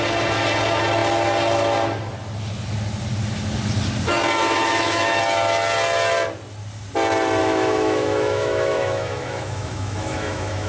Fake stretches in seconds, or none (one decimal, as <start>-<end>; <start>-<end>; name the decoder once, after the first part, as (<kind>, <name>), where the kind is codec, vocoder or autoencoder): 4.4-5.2 (autoencoder, DAC-VAE); 7.4-10.7